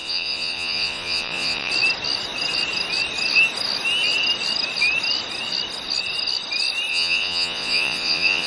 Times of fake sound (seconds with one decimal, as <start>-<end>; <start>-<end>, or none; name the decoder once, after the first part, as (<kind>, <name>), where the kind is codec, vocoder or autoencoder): 0.0-1.7 (vocoder, Vocos); 6.9-8.5